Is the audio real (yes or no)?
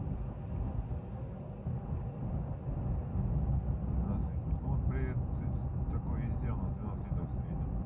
yes